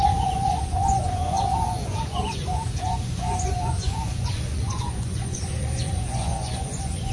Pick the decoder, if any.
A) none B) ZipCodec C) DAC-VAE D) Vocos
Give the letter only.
D